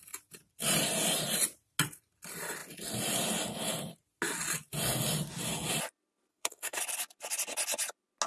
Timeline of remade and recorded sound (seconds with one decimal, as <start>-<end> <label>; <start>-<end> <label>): 0.0-6.3 recorded; 6.3-6.8 remade; 6.8-8.3 recorded